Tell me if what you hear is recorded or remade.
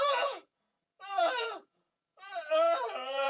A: remade